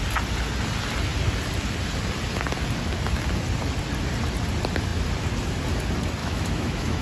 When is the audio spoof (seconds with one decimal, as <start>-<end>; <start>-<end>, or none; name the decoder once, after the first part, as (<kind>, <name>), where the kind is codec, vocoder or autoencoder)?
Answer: 6.2-7.0 (autoencoder, DAC-VAE)